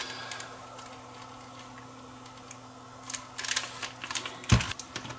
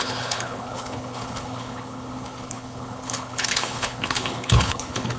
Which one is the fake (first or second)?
second